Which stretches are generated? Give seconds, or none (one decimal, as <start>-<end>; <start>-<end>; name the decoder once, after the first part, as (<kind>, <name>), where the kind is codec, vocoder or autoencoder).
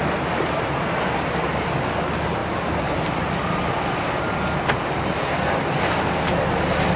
2.4-3.3 (vocoder, BigVGAN v2)